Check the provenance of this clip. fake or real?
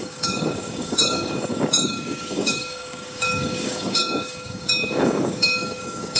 fake